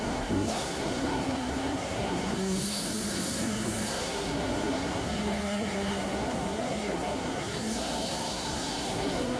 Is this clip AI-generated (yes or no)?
yes